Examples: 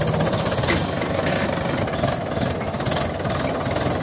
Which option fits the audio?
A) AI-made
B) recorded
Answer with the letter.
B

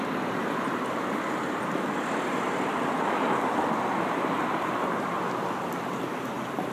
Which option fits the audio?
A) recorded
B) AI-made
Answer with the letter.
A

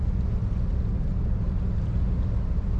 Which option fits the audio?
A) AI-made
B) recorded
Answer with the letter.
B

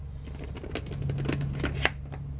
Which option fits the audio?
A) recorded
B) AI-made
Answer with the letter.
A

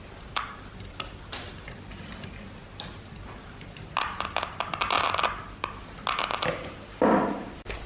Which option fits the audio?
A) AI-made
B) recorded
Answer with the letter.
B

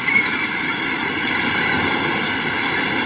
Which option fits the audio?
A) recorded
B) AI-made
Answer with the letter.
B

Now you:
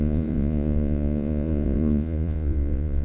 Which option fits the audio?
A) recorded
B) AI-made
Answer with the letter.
B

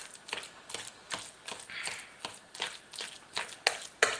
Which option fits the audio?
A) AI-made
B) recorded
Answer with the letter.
B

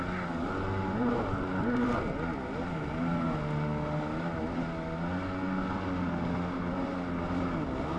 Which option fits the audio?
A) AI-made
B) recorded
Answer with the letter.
B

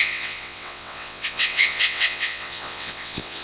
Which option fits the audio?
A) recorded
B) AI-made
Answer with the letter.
B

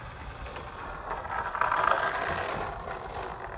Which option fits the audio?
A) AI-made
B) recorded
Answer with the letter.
B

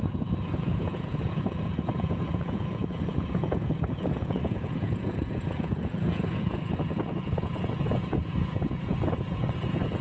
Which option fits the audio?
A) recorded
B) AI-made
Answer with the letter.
B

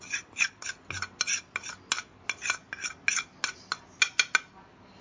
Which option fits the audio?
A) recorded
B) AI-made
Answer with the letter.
A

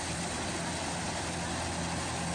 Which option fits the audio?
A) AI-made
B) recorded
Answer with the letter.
B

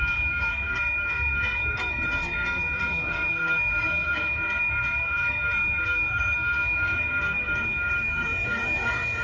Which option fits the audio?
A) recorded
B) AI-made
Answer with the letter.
B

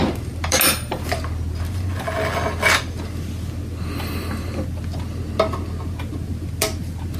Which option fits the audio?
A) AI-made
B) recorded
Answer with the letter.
B